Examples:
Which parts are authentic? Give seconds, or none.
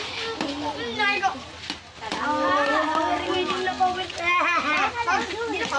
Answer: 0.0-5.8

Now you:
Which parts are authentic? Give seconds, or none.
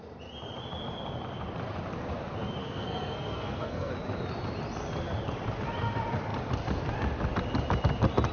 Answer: 0.0-2.6; 3.9-8.3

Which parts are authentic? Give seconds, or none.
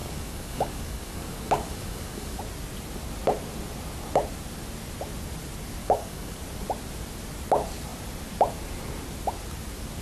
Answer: 2.4-5.8; 6.4-10.0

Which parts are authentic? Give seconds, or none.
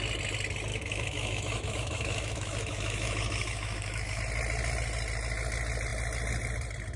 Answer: 0.0-0.7; 4.2-7.0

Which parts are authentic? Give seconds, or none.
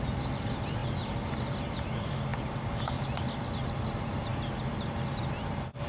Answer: 2.3-3.8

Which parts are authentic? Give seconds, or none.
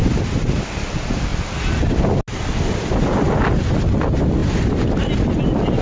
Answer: 0.0-5.8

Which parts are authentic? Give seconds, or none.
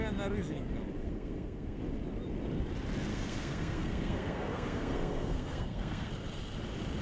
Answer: 0.0-1.0; 1.8-3.1; 6.1-7.0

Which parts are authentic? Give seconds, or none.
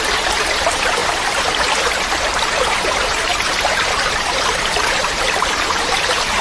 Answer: none